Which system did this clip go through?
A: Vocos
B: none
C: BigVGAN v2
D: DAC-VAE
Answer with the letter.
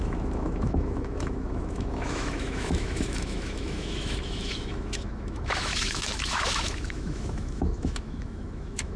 D